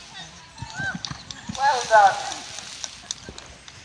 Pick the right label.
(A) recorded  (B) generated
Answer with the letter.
A